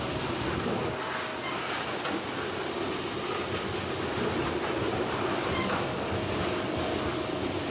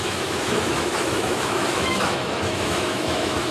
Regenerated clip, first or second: second